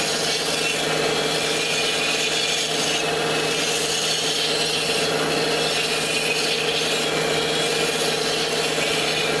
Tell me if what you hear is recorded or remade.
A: recorded